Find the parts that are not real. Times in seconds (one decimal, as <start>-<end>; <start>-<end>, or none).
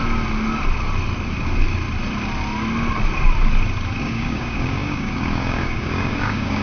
4.0-6.6